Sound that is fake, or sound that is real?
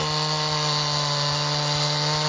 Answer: real